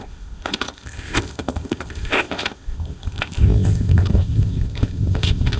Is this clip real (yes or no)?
no